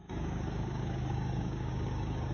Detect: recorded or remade remade